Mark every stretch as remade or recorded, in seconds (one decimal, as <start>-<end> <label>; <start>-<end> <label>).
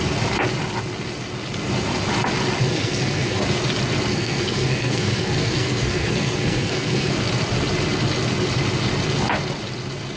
0.0-2.6 recorded; 2.6-3.4 remade; 3.4-4.1 recorded; 4.1-7.1 remade; 7.1-10.2 recorded